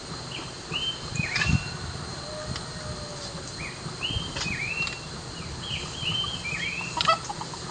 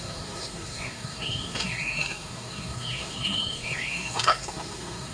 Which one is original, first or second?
first